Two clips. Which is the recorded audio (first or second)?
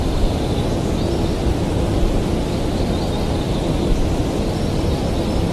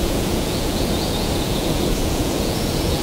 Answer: first